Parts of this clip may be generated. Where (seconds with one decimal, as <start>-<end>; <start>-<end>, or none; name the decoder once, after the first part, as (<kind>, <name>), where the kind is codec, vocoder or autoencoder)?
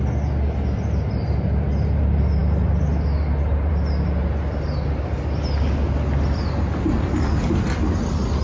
none